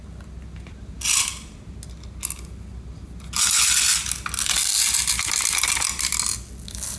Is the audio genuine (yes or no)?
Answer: yes